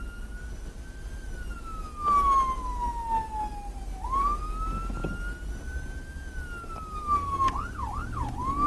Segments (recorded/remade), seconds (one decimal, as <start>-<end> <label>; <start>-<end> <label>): 0.0-8.7 recorded